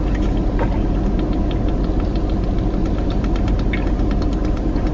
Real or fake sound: real